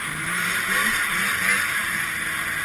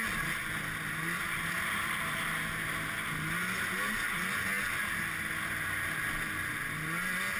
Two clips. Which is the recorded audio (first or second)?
second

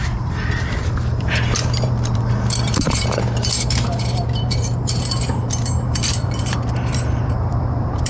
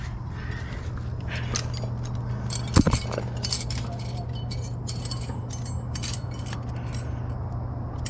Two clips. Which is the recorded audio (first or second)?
second